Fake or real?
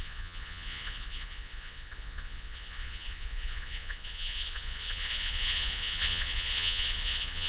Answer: fake